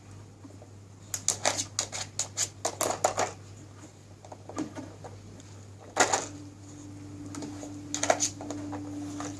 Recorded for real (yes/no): yes